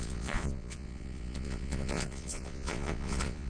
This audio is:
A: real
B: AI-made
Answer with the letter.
B